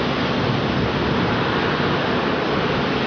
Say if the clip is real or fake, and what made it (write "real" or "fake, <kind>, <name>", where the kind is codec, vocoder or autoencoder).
real